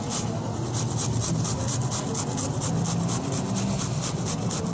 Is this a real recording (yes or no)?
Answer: yes